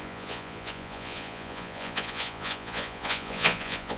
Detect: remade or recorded remade